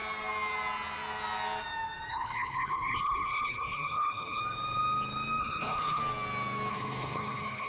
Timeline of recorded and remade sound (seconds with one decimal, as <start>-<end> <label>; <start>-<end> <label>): 0.0-2.1 recorded; 2.1-4.4 remade; 4.4-5.4 recorded; 5.4-6.0 remade; 6.0-6.7 recorded; 6.7-7.7 remade